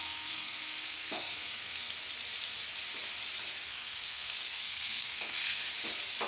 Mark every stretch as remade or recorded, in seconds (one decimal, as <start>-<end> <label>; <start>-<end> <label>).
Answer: 0.0-1.9 remade; 1.9-3.7 recorded; 3.7-5.7 remade; 5.7-6.3 recorded